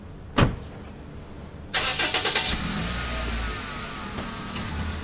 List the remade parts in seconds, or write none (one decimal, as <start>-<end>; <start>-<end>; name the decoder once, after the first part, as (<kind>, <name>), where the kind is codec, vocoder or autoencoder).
none